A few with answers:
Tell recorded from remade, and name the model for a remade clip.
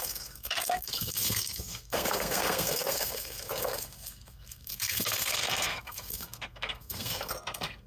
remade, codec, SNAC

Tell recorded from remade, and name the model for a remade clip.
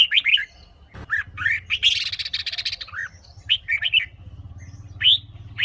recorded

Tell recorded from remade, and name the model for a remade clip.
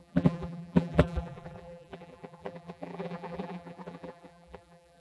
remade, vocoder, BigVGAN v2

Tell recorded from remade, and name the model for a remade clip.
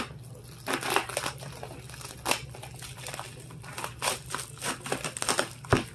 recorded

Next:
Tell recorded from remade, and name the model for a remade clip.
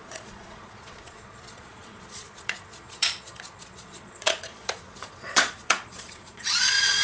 remade, vocoder, Vocos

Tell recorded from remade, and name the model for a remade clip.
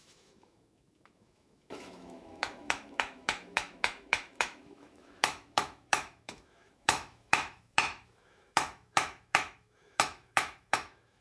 remade, autoencoder, DAC-VAE